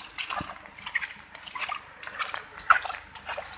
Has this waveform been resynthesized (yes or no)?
no